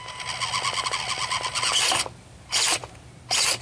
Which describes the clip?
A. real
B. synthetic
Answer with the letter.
A